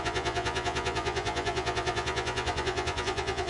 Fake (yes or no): yes